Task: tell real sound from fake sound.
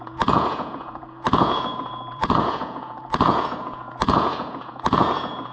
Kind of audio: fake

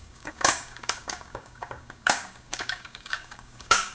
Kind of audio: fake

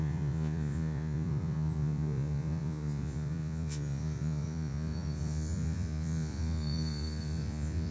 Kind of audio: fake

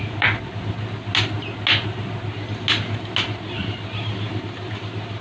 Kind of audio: real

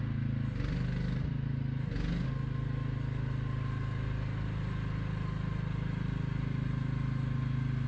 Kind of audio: real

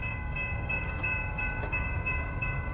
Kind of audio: fake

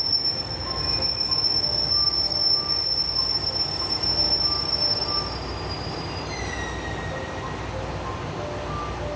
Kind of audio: real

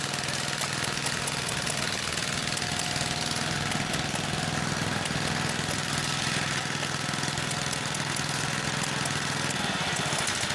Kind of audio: real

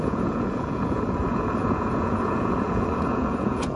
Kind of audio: fake